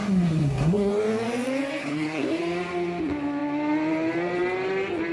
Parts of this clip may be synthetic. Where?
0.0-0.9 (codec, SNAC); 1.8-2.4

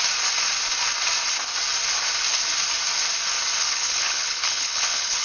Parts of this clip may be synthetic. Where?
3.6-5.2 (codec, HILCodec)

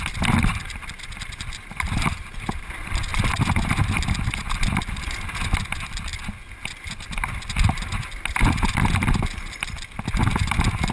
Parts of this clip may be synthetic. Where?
0.0-6.4 (vocoder, BigVGAN v2)